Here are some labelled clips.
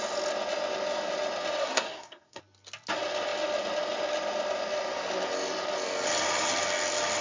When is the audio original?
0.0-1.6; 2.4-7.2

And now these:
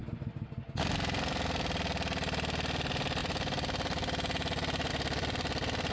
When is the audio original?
0.0-5.9

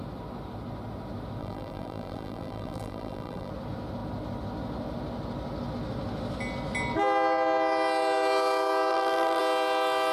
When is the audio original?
0.0-1.4; 3.5-8.9; 9.4-10.1

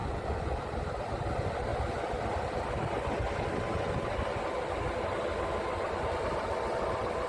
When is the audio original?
0.6-7.3